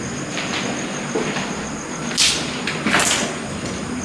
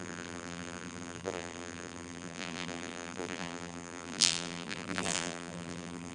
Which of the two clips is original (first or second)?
first